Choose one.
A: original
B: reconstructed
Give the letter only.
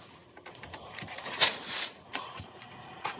B